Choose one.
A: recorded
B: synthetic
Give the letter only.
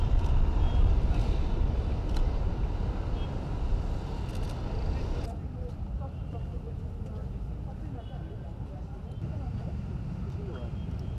A